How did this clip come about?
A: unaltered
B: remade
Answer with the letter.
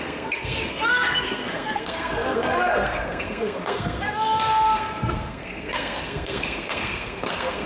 B